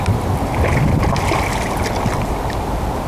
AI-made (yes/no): no